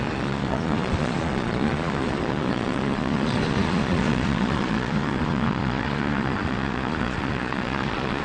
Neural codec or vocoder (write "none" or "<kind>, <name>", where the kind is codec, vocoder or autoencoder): vocoder, Vocos